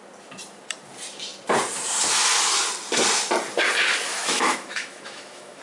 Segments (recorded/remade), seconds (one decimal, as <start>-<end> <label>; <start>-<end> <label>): 0.0-4.1 recorded; 4.1-5.6 remade